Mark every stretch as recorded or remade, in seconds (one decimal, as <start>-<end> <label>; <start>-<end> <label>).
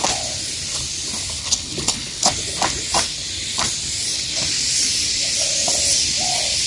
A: 0.0-1.4 recorded; 1.4-2.3 remade; 2.3-6.7 recorded